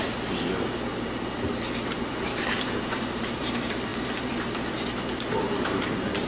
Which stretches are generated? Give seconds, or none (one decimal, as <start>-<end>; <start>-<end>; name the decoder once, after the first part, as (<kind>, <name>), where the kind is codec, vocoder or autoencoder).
0.0-6.3 (vocoder, BigVGAN v2)